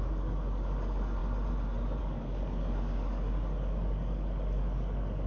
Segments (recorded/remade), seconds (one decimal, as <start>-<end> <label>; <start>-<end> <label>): 0.0-1.2 remade; 1.2-2.0 recorded; 2.0-5.3 remade